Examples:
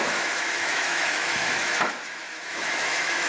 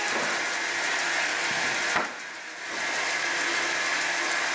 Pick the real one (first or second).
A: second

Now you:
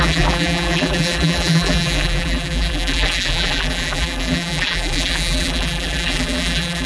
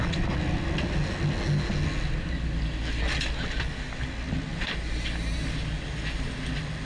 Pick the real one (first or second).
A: second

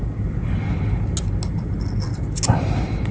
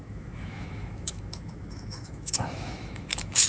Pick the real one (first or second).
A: first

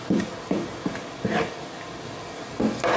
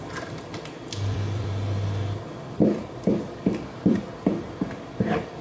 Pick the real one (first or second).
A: first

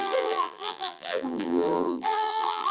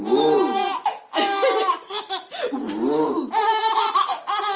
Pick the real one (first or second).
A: second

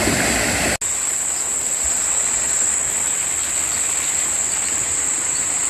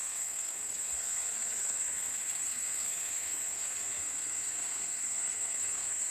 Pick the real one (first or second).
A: first